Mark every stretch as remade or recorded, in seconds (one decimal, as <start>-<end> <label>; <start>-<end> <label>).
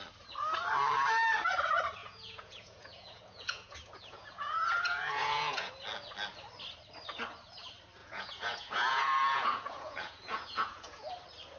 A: 0.0-2.0 recorded; 2.0-5.7 remade; 5.7-8.0 recorded; 8.0-11.1 remade; 11.1-11.6 recorded